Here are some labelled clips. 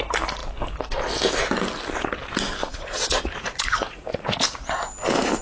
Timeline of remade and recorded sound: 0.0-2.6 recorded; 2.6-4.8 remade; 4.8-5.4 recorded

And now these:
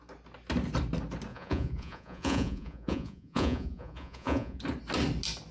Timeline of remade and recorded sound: 0.0-1.3 recorded; 1.3-4.6 remade; 4.6-5.5 recorded

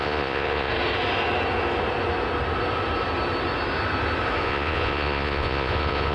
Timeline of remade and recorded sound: 0.0-0.7 remade; 0.7-4.4 recorded; 4.4-6.1 remade